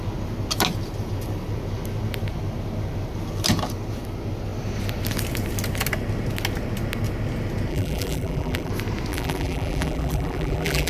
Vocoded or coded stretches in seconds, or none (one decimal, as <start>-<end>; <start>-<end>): 7.7-8.7; 9.1-10.9